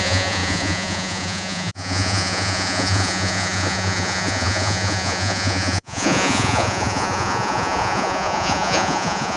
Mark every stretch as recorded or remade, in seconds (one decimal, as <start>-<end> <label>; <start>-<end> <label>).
0.0-9.4 remade